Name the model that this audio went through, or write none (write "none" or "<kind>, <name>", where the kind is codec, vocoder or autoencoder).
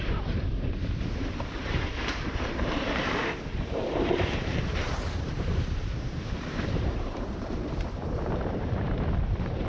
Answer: vocoder, BigVGAN v2